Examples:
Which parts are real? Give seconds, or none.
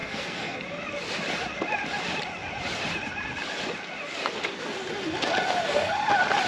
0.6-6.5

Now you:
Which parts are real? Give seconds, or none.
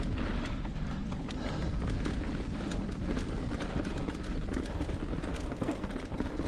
0.0-5.3; 5.9-6.5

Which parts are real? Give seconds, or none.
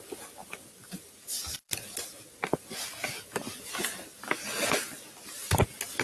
0.0-6.0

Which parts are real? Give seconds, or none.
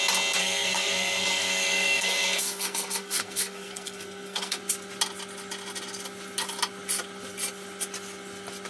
0.0-0.4; 4.6-8.7